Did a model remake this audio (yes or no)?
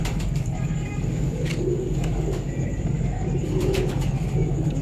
yes